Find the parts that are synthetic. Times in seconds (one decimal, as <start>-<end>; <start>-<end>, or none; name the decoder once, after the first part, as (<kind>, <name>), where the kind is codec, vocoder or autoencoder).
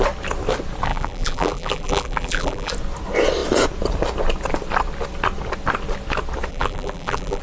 0.9-2.7 (vocoder, BigVGAN v2); 6.5-7.4